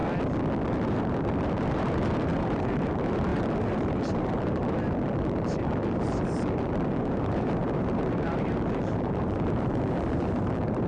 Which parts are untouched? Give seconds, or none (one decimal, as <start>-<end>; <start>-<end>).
0.0-0.7

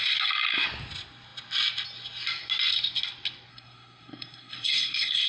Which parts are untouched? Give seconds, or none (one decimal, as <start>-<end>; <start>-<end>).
0.0-3.5

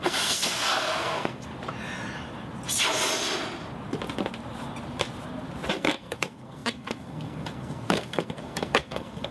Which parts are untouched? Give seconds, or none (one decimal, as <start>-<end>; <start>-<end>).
1.5-5.7

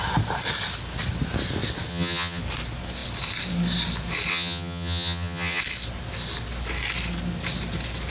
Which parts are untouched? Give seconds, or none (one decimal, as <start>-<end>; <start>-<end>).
0.0-1.9; 2.4-4.3; 5.6-8.1